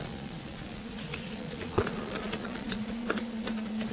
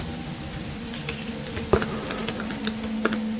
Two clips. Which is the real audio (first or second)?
second